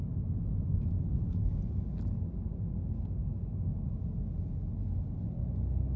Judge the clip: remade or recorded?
recorded